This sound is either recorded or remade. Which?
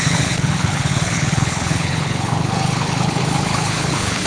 remade